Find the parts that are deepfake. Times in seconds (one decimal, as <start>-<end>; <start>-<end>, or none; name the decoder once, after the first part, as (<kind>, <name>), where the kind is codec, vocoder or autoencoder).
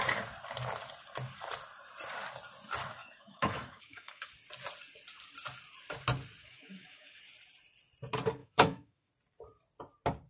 3.0-4.3 (autoencoder, DAC-VAE); 6.4-7.2; 8.4-9.1